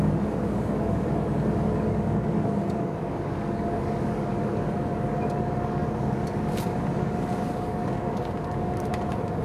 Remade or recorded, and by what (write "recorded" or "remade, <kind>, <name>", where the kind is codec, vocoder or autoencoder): remade, codec, DAC